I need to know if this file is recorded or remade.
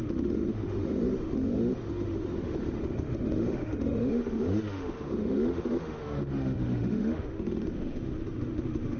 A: remade